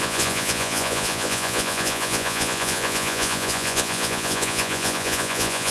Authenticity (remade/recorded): remade